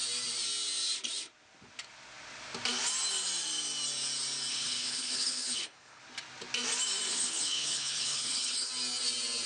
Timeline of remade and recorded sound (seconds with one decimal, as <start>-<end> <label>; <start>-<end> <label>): 0.0-4.5 recorded; 4.5-6.0 remade; 6.0-7.1 recorded; 7.1-8.7 remade; 8.7-9.5 recorded